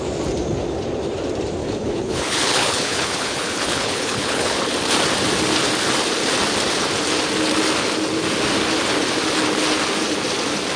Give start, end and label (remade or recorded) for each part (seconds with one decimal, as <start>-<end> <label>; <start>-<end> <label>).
0.0-1.6 recorded; 1.6-4.6 remade; 4.6-10.8 recorded